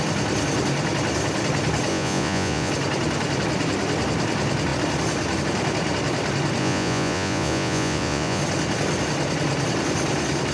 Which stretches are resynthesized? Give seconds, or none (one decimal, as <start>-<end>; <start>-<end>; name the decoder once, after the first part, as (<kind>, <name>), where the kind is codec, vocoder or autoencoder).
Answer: 1.9-2.7 (vocoder, Vocos); 6.6-8.4